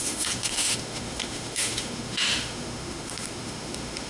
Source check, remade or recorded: remade